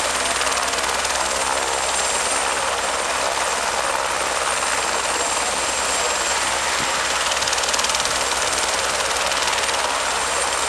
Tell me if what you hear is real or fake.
real